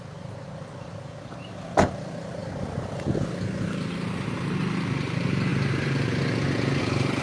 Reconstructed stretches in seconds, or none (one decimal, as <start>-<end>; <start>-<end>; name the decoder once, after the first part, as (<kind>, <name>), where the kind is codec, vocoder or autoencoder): none